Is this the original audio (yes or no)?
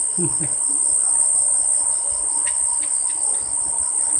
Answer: yes